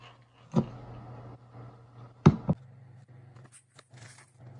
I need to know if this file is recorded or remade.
recorded